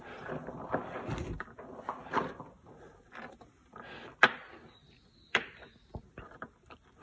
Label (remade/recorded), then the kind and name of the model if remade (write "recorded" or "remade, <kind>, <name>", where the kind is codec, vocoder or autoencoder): recorded